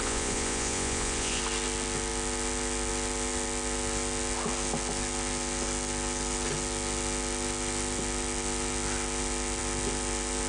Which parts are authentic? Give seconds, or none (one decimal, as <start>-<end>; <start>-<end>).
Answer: 1.4-10.5